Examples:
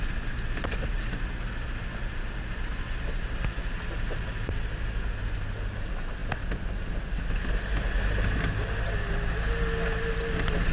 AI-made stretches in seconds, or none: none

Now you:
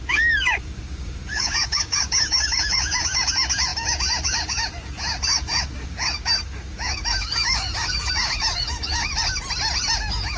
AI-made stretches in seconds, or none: 0.0-9.1 (codec, DAC); 10.0-10.4

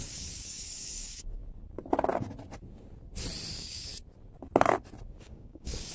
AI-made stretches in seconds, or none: 0.0-1.4 (codec, DAC); 3.5-3.9; 5.2-5.9

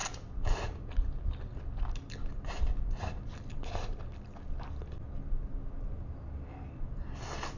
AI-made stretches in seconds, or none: none